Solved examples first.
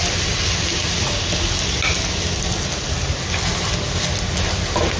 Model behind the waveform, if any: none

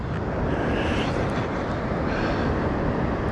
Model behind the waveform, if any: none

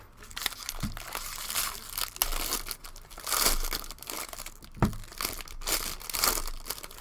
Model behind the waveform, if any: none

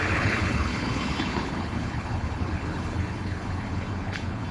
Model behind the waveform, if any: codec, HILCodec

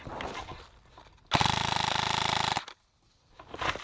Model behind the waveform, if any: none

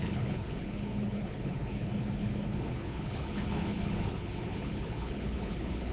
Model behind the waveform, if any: codec, HILCodec